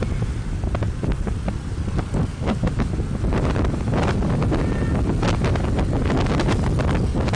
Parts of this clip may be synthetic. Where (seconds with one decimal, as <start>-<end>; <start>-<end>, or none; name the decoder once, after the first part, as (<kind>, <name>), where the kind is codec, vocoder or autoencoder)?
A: 2.3-2.9 (codec, DAC)